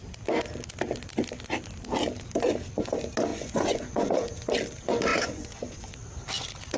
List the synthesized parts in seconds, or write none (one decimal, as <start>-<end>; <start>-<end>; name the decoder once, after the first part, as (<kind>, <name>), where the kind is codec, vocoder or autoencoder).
3.3-4.5 (vocoder, Vocos); 5.1-5.9